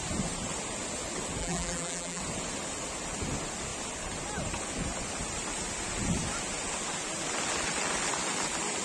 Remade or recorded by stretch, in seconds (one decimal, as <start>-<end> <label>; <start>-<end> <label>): 0.0-1.4 recorded; 1.4-2.2 remade; 2.2-8.8 recorded